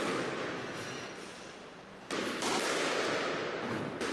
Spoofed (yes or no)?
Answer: no